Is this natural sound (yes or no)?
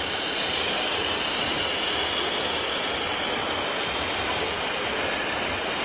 yes